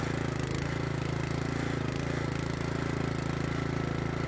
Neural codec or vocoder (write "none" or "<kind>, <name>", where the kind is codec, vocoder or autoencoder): none